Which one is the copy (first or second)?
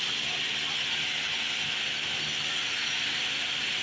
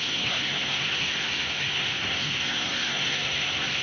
second